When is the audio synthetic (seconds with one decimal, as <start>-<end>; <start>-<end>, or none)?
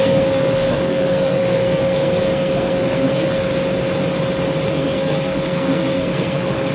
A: 0.0-3.5; 4.7-6.7